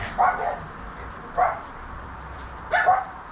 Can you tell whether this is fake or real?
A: real